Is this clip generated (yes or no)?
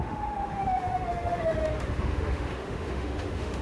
yes